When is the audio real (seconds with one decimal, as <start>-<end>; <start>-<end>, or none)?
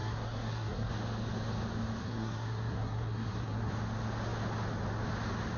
0.9-2.0; 3.7-5.6